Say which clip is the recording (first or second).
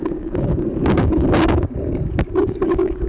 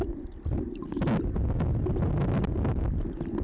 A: second